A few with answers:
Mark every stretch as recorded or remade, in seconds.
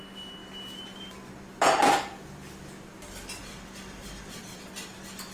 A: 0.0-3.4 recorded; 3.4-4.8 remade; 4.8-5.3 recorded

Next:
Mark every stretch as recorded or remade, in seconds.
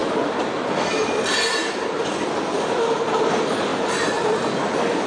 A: 0.0-3.1 remade; 3.1-3.7 recorded; 3.7-4.6 remade; 4.6-5.1 recorded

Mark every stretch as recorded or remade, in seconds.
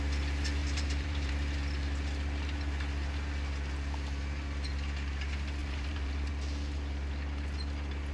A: 0.0-0.6 recorded; 0.6-1.3 remade; 1.3-5.6 recorded; 5.6-6.3 remade; 6.3-8.1 recorded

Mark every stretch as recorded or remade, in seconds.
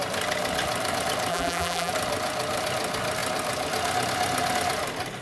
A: 0.0-1.3 recorded; 1.3-1.9 remade; 1.9-5.2 recorded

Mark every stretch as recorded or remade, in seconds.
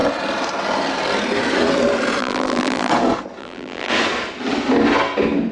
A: 0.0-2.2 recorded; 2.2-2.9 remade; 2.9-3.4 recorded; 3.4-3.9 remade; 3.9-5.5 recorded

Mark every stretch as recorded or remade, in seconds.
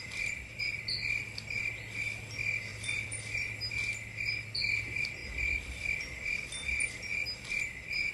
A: 0.0-2.7 recorded; 2.7-3.7 remade; 3.7-8.1 recorded